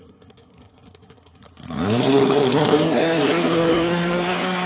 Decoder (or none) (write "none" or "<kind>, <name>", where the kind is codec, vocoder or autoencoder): codec, SNAC